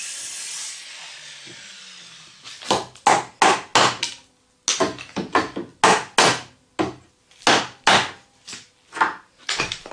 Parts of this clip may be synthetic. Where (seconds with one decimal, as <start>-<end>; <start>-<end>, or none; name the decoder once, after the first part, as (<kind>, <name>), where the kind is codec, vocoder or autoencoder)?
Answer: 9.1-9.9 (vocoder, BigVGAN v2)